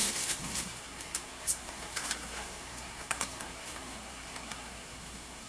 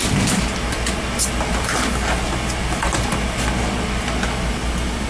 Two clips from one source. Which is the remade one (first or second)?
first